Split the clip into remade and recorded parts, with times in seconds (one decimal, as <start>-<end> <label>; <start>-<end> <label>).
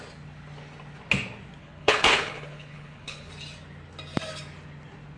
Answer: 0.0-1.6 recorded; 1.6-3.3 remade; 3.3-5.2 recorded